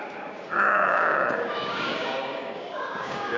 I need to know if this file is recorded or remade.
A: remade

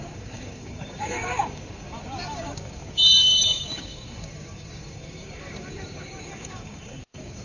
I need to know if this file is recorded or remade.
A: remade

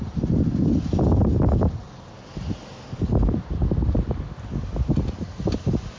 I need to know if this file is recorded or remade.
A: recorded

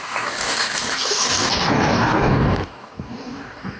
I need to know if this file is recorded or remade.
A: remade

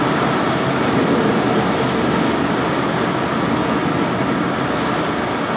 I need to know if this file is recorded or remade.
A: recorded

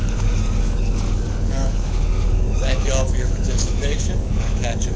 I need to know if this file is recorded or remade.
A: remade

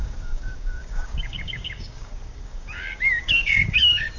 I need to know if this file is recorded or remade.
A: remade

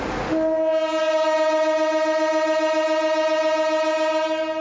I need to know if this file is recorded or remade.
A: recorded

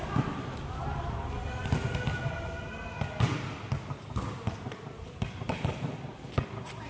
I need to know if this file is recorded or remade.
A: recorded